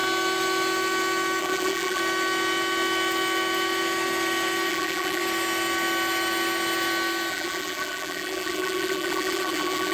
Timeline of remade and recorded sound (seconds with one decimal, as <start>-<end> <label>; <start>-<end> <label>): 0.0-1.4 recorded; 1.4-2.0 remade; 2.0-4.7 recorded; 4.7-5.2 remade; 5.2-7.3 recorded; 7.3-9.9 remade